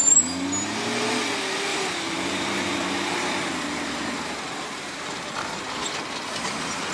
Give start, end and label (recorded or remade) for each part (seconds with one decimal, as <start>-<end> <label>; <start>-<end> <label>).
0.0-1.7 recorded; 1.7-5.8 remade; 5.8-6.9 recorded